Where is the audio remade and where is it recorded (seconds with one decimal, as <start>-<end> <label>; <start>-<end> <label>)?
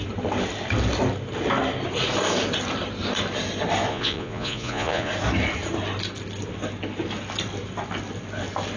0.0-3.9 recorded; 3.9-5.1 remade; 5.1-8.8 recorded